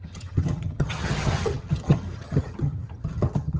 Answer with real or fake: fake